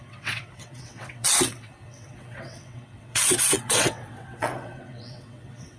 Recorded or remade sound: remade